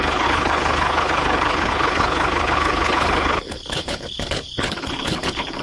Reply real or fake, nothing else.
fake